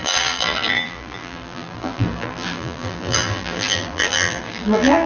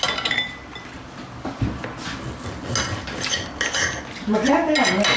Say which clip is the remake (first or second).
first